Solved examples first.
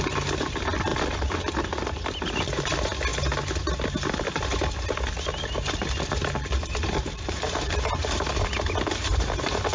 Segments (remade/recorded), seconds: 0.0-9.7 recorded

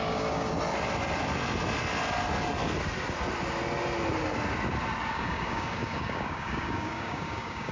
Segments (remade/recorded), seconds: 0.0-0.5 remade; 0.5-5.1 recorded; 5.1-7.7 remade